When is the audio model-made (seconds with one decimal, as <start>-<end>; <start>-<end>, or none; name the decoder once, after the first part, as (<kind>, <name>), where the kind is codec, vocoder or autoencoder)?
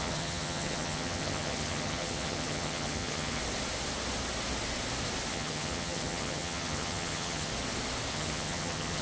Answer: 0.0-3.4 (vocoder, HiFi-GAN); 5.3-7.5; 8.1-9.0